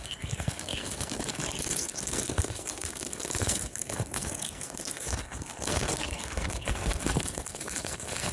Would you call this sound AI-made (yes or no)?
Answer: yes